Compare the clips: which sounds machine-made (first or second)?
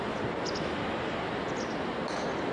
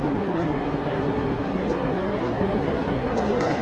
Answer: second